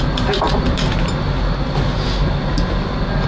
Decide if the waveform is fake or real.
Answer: real